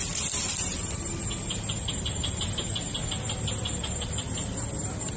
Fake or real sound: real